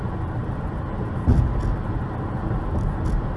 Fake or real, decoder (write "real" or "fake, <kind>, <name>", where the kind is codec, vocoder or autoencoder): real